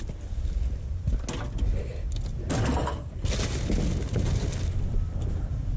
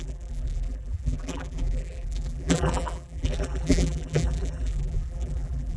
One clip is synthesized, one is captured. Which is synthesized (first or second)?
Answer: second